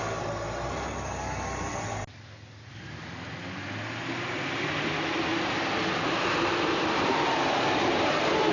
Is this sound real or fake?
real